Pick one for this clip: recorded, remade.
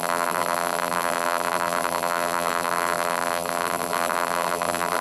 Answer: remade